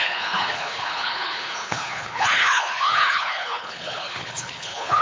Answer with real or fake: fake